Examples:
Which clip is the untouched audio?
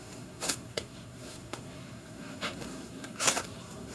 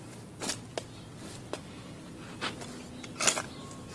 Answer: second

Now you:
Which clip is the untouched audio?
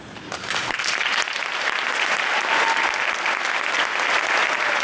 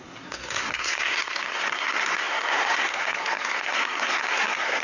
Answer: first